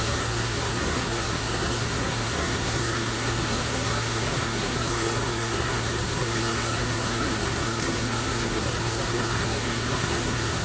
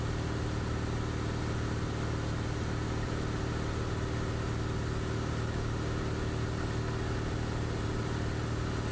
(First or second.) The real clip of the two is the second